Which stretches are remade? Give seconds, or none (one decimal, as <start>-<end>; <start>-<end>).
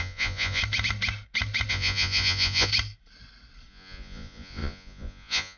0.0-0.6; 1.7-2.7; 3.7-5.6